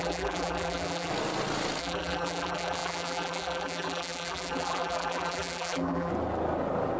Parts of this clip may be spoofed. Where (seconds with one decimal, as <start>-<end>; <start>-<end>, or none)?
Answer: 0.0-1.1; 1.8-6.1